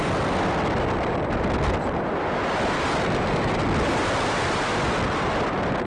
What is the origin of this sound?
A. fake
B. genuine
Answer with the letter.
B